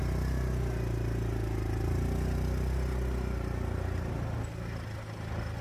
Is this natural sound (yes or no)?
yes